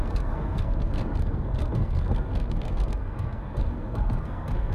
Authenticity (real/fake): fake